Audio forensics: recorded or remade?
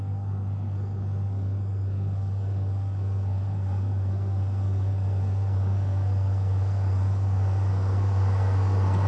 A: remade